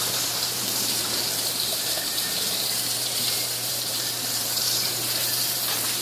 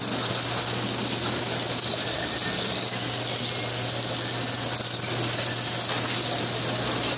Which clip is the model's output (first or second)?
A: first